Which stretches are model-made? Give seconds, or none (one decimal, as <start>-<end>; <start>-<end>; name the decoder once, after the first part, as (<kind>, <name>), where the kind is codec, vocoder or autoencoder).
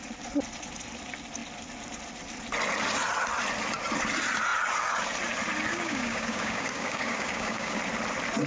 5.7-7.8 (codec, DAC)